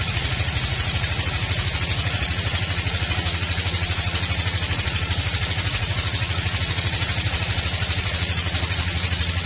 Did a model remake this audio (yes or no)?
yes